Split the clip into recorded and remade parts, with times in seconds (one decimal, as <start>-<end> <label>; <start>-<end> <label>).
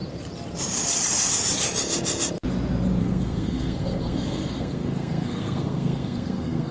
0.0-3.0 recorded; 3.0-6.7 remade